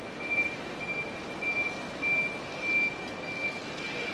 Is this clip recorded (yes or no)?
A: yes